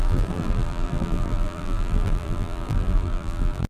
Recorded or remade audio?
remade